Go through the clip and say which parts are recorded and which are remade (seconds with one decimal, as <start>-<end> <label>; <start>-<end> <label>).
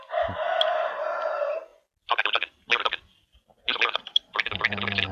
0.0-3.5 recorded; 3.5-4.4 remade; 4.4-5.1 recorded